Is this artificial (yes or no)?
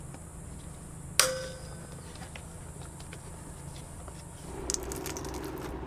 no